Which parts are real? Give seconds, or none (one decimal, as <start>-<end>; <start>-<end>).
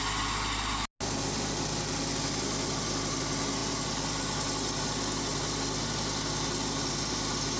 0.0-7.6